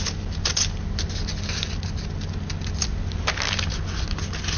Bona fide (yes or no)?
yes